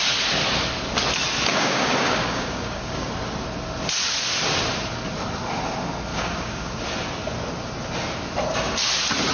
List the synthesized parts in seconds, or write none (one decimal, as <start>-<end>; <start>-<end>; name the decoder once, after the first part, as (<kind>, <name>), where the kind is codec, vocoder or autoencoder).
1.5-3.1 (codec, DAC); 6.1-6.8